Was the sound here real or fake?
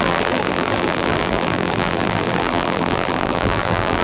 fake